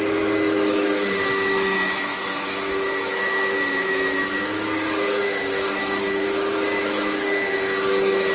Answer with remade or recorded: remade